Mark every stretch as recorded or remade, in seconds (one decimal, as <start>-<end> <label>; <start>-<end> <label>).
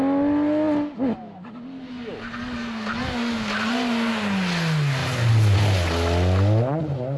0.0-7.2 recorded